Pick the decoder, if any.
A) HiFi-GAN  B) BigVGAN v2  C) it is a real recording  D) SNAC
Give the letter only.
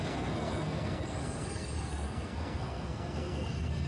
D